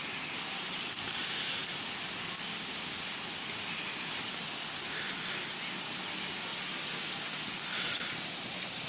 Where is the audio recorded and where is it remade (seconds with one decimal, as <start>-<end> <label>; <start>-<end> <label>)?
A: 0.0-8.9 recorded

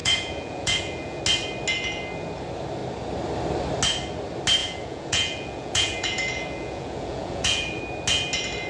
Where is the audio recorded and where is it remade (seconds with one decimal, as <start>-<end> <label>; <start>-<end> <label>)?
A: 0.0-1.2 remade; 1.2-4.6 recorded; 4.6-7.8 remade; 7.8-8.7 recorded

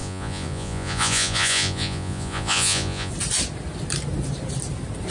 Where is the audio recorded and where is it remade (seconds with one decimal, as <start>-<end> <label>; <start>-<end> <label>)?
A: 0.0-3.1 remade; 3.1-5.1 recorded